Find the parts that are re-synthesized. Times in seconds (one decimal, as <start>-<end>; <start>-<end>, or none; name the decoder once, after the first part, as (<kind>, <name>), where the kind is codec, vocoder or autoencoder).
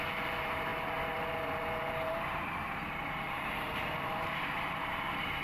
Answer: 0.0-5.4 (vocoder, BigVGAN v2)